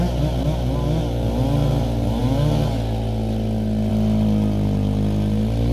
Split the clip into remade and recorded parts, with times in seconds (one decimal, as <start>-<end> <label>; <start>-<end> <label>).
0.0-5.7 recorded